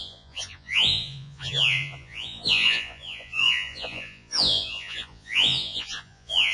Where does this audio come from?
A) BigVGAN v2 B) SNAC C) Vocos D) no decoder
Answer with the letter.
C